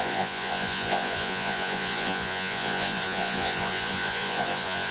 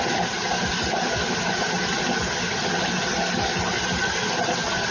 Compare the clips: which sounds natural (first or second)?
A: second